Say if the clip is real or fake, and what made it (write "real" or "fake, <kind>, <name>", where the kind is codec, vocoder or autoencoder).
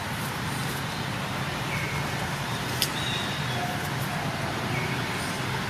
real